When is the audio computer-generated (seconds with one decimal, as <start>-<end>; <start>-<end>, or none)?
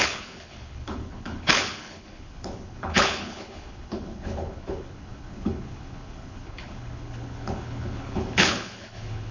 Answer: 0.0-9.3